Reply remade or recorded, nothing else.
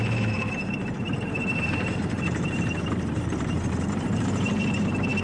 remade